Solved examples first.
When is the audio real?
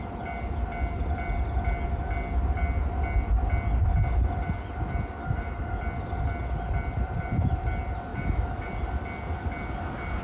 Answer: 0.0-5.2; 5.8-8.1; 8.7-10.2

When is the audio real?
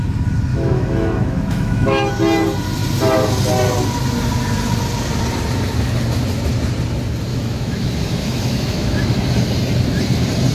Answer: 0.0-0.5; 2.1-7.3; 9.1-10.5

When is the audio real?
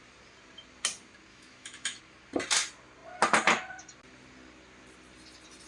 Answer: 0.0-1.3; 2.0-5.7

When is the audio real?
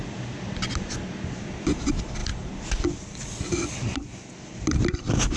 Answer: 0.0-5.4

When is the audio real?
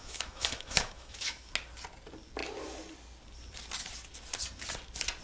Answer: 1.5-5.2